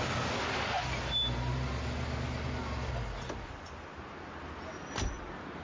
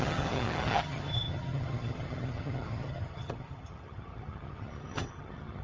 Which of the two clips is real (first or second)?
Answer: first